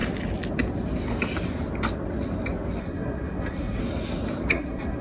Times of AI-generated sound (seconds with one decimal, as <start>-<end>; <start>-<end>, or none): 2.8-3.8; 4.5-5.0